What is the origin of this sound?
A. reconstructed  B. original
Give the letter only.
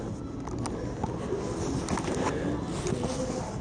B